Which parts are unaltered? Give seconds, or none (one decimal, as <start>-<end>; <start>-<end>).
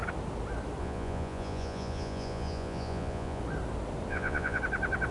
0.0-0.8; 3.4-4.1; 4.6-5.1